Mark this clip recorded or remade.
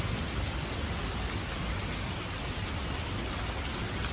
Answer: recorded